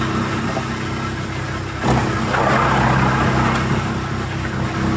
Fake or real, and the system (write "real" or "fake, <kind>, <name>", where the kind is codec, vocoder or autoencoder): real